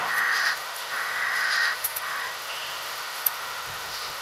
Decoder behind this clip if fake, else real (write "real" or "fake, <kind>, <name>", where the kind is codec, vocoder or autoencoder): fake, autoencoder, DAC-VAE